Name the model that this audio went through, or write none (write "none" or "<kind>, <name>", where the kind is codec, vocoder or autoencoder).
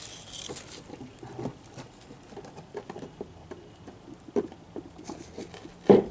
none